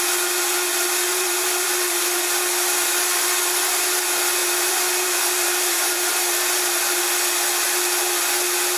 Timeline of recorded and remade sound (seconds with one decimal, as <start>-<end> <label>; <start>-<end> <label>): 0.0-1.1 recorded; 1.1-2.2 remade; 2.2-4.4 recorded; 4.4-7.0 remade; 7.0-8.8 recorded